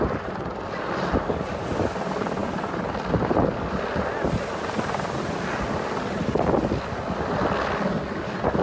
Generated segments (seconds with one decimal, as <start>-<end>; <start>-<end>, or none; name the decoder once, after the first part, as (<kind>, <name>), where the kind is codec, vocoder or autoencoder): none